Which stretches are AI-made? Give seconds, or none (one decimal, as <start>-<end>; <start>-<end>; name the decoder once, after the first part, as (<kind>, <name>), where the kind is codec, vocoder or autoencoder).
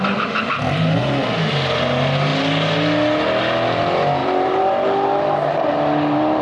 4.2-6.4 (vocoder, BigVGAN v2)